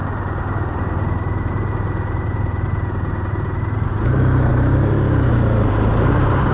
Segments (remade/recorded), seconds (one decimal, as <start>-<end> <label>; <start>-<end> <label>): 0.0-3.9 recorded; 3.9-6.5 remade